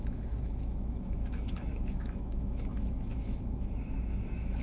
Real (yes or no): no